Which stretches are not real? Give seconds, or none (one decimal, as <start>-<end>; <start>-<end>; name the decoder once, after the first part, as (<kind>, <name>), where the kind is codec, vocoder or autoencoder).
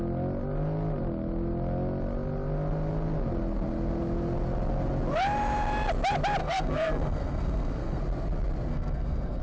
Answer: 6.4-8.0 (codec, SNAC); 8.7-9.4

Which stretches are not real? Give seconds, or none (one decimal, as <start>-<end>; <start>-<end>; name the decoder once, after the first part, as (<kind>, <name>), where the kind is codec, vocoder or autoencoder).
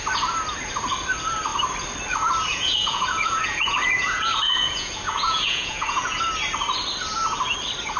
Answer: 2.5-6.2 (vocoder, Vocos)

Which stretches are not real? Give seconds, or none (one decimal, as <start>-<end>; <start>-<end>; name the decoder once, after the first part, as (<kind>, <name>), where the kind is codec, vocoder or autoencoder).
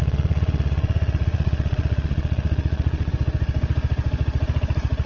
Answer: 0.0-3.1 (vocoder, Vocos)